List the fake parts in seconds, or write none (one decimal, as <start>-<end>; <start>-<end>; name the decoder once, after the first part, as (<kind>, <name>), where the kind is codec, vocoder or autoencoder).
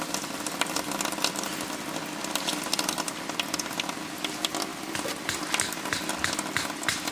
2.5-3.1 (vocoder, BigVGAN v2); 4.7-5.2